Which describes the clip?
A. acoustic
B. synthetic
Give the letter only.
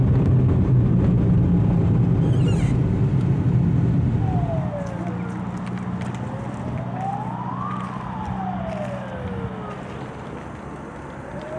A